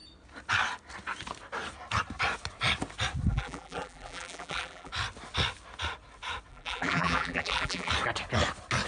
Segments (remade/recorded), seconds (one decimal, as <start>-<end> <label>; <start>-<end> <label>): 0.0-3.3 recorded; 3.3-4.9 remade; 4.9-6.5 recorded; 6.5-7.9 remade; 7.9-8.9 recorded

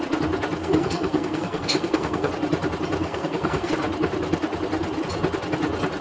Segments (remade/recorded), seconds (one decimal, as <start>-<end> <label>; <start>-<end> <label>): 0.0-0.6 recorded; 0.6-2.3 remade; 2.3-3.0 recorded; 3.0-3.7 remade; 3.7-6.0 recorded

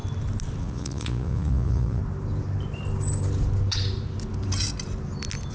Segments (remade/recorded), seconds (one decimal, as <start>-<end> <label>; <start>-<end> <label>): 0.0-0.6 recorded; 0.6-2.0 remade; 2.0-5.5 recorded

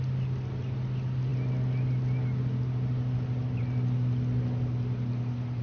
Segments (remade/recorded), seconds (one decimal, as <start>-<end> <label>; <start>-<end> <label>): 0.0-5.6 recorded

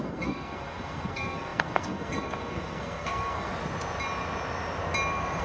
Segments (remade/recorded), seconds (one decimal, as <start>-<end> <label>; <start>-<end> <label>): 0.0-3.5 remade; 3.5-5.4 recorded

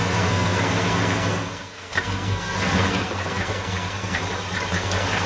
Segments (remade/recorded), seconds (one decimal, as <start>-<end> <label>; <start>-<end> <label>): 0.0-4.2 remade; 4.2-4.7 recorded; 4.7-5.3 remade

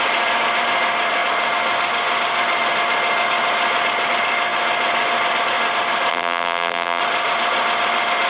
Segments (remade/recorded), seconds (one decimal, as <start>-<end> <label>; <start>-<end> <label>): 0.0-6.1 recorded; 6.1-7.0 remade; 7.0-8.3 recorded

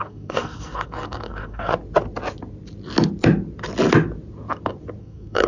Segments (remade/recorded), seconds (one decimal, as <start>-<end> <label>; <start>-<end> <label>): 0.0-1.7 remade; 1.7-5.0 recorded; 5.0-5.5 remade